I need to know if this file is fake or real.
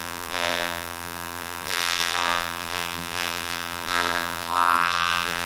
fake